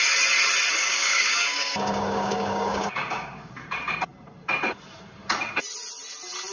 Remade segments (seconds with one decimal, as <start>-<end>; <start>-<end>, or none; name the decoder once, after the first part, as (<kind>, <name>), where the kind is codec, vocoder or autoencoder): 0.8-3.5 (codec, DAC)